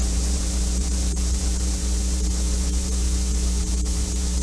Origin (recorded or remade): remade